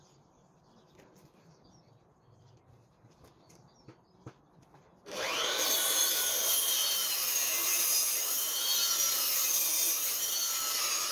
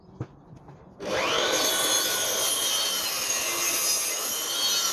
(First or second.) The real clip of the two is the second